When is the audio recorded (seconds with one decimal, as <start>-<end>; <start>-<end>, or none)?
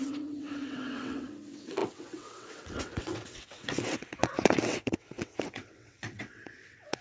none